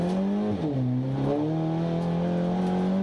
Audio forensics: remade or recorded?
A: recorded